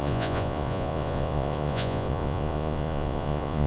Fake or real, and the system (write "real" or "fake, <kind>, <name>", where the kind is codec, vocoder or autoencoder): fake, vocoder, Vocos